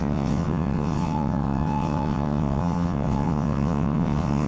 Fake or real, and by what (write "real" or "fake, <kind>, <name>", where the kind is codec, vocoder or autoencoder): fake, vocoder, WaveNeXt